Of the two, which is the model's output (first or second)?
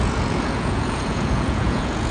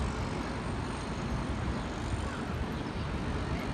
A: first